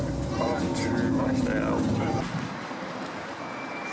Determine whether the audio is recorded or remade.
remade